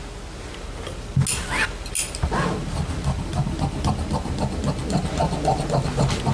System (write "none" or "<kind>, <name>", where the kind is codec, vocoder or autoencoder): none